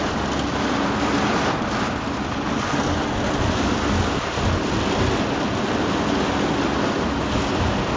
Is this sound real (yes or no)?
yes